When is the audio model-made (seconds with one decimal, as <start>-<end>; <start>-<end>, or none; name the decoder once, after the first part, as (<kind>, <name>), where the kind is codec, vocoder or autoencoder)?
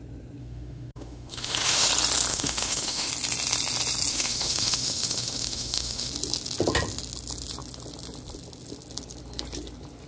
0.4-1.9 (autoencoder, DAC-VAE); 2.3-3.1; 4.1-6.1